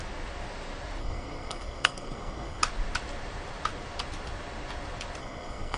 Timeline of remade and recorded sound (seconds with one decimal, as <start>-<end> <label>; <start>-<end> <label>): 0.0-1.0 recorded; 1.0-2.6 remade; 2.6-5.2 recorded; 5.2-5.8 remade